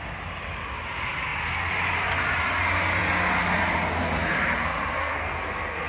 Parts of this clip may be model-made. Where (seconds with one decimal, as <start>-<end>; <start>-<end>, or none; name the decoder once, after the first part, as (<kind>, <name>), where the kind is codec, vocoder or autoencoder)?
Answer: 5.0-5.9 (codec, SNAC)